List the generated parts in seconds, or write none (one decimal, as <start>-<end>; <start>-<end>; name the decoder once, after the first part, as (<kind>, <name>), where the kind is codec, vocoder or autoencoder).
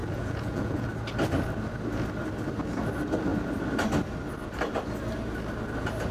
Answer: 0.0-0.9 (vocoder, Vocos)